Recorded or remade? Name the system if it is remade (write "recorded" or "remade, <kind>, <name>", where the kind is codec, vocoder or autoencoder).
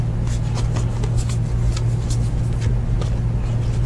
recorded